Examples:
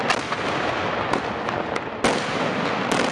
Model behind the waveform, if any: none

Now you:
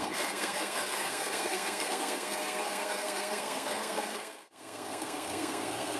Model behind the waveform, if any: codec, SNAC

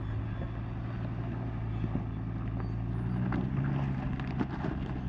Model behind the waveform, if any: none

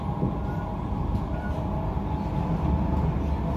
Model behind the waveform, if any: none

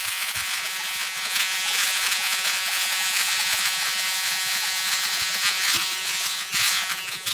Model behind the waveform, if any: vocoder, Vocos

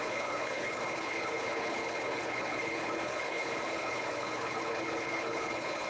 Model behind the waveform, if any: codec, HILCodec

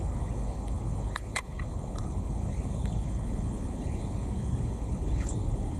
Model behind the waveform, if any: codec, HILCodec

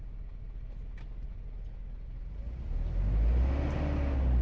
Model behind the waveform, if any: none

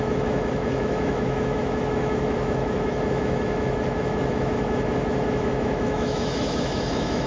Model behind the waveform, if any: autoencoder, DAC-VAE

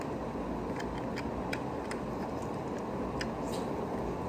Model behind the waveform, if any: none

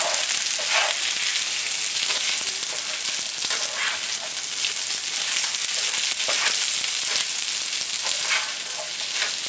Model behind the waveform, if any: none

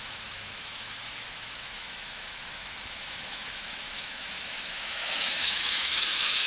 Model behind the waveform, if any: autoencoder, DAC-VAE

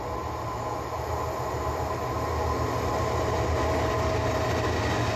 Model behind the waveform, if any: none